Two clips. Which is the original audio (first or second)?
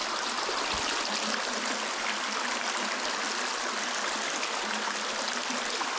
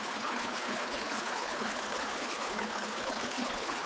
first